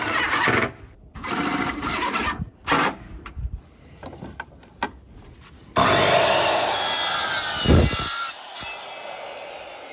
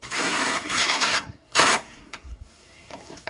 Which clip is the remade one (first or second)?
second